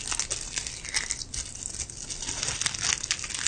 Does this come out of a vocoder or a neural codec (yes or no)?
no